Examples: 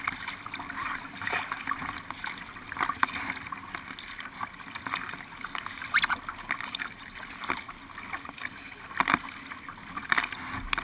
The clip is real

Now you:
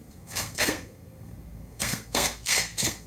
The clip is fake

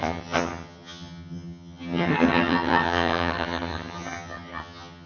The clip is fake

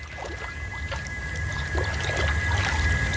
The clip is real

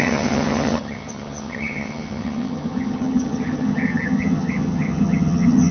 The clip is fake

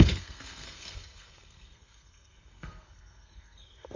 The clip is fake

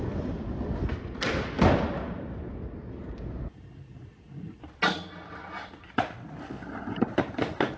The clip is real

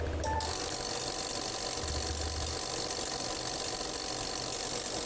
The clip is real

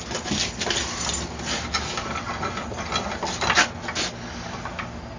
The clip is real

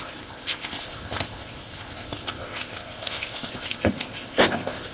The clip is fake